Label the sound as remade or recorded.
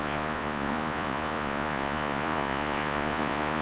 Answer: remade